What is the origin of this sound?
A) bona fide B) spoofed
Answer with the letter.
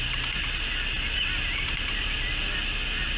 A